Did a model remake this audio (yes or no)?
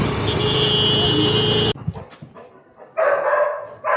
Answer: no